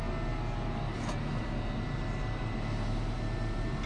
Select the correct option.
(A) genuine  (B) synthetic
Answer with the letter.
A